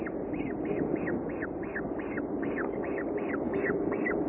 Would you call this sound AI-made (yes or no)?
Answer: no